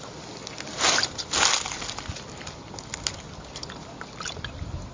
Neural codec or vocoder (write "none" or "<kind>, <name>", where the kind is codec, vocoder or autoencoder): none